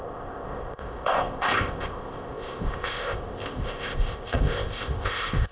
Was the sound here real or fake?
fake